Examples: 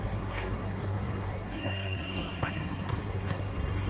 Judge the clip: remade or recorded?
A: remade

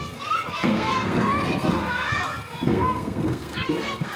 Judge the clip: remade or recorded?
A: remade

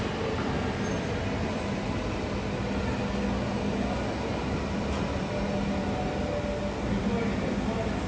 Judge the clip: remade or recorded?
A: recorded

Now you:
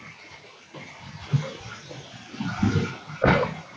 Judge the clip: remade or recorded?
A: recorded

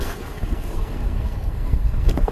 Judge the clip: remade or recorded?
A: remade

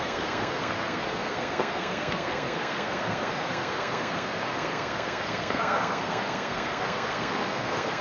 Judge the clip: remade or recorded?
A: remade